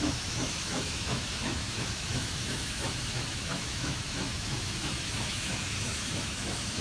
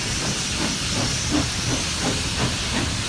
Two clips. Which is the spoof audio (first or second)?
first